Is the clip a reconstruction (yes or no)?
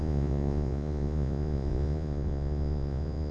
yes